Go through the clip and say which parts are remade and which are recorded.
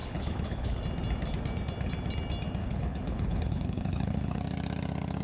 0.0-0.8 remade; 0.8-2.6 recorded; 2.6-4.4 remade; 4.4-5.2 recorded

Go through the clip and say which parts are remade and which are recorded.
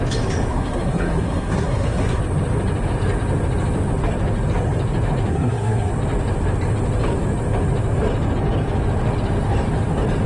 0.0-0.5 recorded; 0.5-2.2 remade; 2.2-5.3 recorded; 5.3-5.9 remade; 5.9-10.3 recorded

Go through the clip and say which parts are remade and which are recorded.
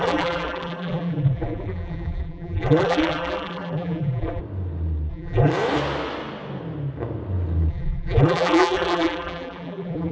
0.0-4.4 remade; 4.4-5.1 recorded; 5.1-5.5 remade; 5.5-7.7 recorded; 7.7-10.1 remade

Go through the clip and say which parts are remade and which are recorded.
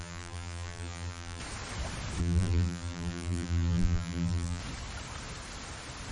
0.0-1.4 remade; 1.4-2.2 recorded; 2.2-4.6 remade; 4.6-6.1 recorded